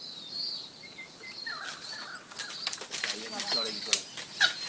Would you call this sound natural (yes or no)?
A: yes